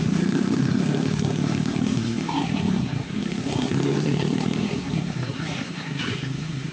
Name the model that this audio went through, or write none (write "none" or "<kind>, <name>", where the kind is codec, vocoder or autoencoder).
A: codec, SNAC